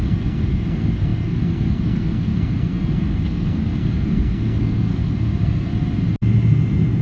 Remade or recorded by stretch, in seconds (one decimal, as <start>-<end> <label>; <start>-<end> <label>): 0.0-5.7 remade; 5.7-7.0 recorded

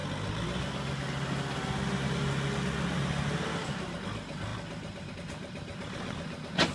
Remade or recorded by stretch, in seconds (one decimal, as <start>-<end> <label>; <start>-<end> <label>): 0.0-6.7 recorded

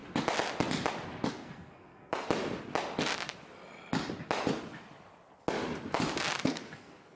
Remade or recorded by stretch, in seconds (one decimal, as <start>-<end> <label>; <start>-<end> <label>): 0.0-1.3 recorded; 1.3-2.1 remade; 2.1-6.4 recorded; 6.4-7.2 remade